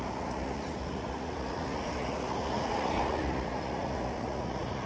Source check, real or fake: fake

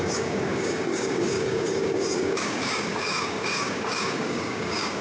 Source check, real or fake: fake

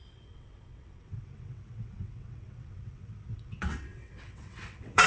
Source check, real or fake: fake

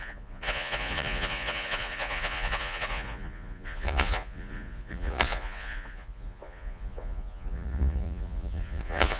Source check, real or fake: fake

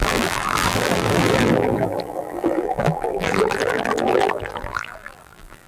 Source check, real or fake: fake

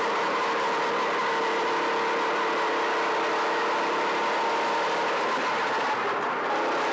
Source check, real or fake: real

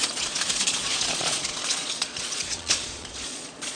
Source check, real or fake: fake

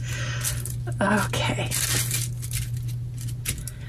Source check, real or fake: real